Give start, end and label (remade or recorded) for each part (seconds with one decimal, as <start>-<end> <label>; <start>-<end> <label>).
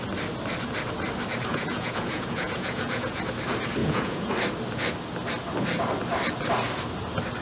0.0-1.5 recorded; 1.5-3.2 remade; 3.2-3.8 recorded; 3.8-4.3 remade; 4.3-7.4 recorded